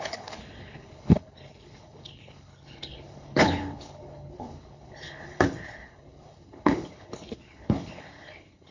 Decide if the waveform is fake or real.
fake